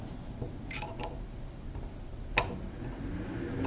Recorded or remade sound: recorded